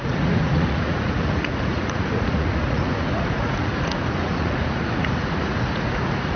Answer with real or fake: fake